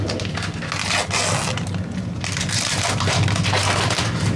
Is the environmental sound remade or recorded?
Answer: recorded